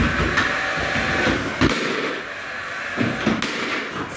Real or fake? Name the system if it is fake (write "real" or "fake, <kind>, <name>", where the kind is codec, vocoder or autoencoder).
real